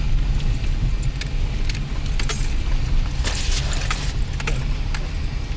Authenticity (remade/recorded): recorded